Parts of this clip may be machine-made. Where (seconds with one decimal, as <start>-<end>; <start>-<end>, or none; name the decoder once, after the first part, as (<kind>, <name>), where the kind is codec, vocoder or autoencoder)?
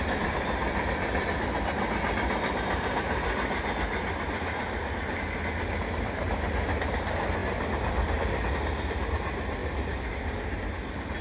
none